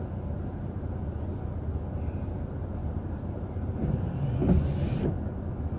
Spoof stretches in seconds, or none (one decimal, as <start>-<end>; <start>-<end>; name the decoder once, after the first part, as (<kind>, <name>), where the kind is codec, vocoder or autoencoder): 2.8-4.0 (vocoder, BigVGAN v2)